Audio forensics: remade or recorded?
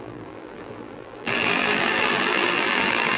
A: remade